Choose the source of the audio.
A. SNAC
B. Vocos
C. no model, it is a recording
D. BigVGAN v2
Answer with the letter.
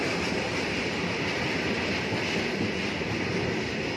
C